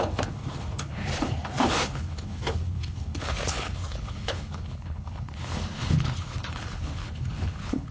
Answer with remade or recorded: remade